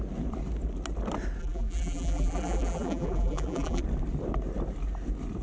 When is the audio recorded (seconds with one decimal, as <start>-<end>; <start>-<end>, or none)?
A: 0.0-1.4; 3.8-5.4